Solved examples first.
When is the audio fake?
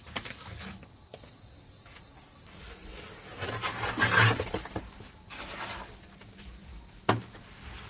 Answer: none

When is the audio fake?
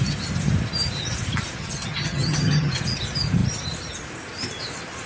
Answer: 1.6-2.7 (vocoder, HiFi-GAN)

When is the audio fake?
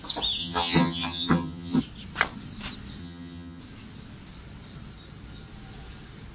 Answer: 0.4-1.8 (vocoder, HiFi-GAN); 3.0-3.6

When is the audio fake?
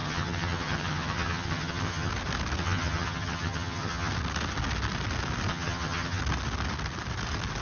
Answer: 0.0-2.1 (vocoder, HiFi-GAN); 2.6-4.1; 5.5-6.2